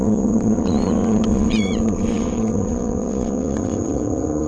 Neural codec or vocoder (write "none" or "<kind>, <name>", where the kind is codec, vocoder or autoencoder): vocoder, Vocos